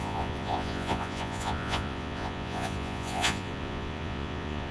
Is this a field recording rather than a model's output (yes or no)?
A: no